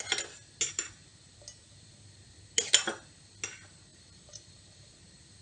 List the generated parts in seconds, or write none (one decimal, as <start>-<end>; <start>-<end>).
3.9-4.9